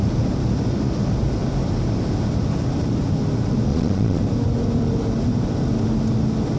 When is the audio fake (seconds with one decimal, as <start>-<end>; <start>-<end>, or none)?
3.7-4.2